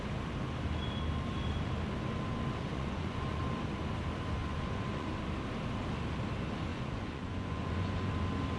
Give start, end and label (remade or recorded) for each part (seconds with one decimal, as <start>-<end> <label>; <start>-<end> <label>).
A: 0.0-2.7 recorded; 2.7-3.4 remade; 3.4-4.4 recorded; 4.4-5.1 remade; 5.1-6.7 recorded; 6.7-8.1 remade; 8.1-8.6 recorded